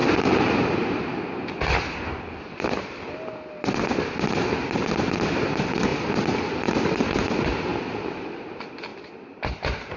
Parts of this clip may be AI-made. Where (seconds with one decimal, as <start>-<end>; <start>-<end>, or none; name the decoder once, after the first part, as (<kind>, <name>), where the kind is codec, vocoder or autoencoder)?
none